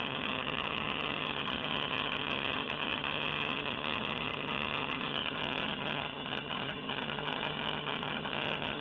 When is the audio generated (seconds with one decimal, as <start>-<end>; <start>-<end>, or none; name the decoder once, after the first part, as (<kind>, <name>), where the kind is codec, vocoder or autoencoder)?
0.0-8.8 (vocoder, HiFi-GAN)